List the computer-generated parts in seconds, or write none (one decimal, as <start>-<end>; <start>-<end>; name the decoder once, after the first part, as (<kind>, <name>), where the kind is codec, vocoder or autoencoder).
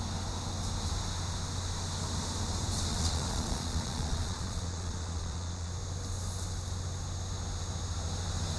2.9-5.7 (vocoder, Vocos)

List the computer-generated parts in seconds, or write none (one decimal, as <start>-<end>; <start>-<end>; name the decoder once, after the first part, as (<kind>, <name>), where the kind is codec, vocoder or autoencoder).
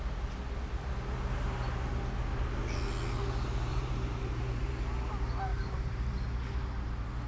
3.7-4.7 (vocoder, BigVGAN v2); 5.5-6.3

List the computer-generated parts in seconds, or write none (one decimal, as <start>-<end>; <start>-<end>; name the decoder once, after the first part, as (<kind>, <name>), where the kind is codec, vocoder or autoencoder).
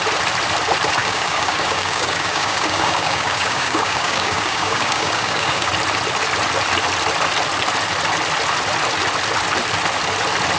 1.0-5.7 (codec, DAC)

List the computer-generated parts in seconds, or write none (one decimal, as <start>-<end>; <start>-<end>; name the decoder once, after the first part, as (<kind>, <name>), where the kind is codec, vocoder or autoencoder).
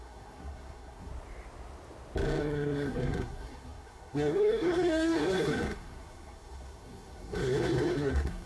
0.0-1.1 (codec, SNAC); 2.4-8.5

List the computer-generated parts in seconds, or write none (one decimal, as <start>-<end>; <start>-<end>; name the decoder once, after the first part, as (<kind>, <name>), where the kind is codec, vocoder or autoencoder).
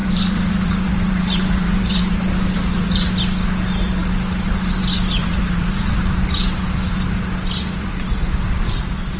0.0-3.1 (vocoder, BigVGAN v2); 5.2-6.2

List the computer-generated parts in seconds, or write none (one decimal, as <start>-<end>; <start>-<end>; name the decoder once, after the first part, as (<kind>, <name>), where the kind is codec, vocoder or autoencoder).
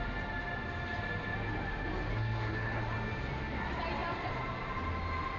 2.1-2.8 (codec, SNAC)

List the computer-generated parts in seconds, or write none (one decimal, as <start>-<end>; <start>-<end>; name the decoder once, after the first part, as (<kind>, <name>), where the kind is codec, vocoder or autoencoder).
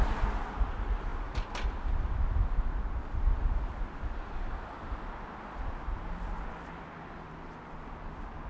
none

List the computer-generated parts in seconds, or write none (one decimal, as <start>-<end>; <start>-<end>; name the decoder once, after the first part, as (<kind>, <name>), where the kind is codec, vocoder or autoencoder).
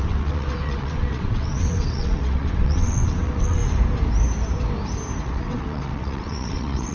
0.0-3.6 (vocoder, WaveNeXt); 5.2-6.9